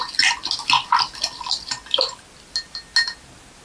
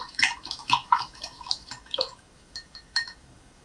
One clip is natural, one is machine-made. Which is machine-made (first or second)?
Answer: second